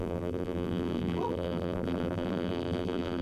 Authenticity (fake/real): fake